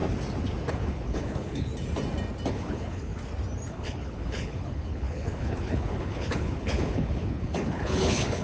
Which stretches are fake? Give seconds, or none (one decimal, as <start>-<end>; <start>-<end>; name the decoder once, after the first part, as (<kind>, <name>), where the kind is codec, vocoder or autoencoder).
0.7-1.7 (codec, HILCodec); 2.5-3.1; 3.7-8.4